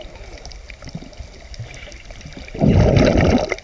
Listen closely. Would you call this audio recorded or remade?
recorded